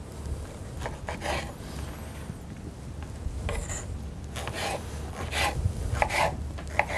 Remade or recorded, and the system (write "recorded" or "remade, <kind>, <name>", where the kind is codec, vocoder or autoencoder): recorded